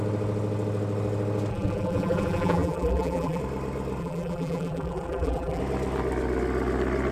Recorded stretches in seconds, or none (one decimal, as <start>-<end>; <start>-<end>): 0.0-1.5; 3.4-4.0; 5.6-7.1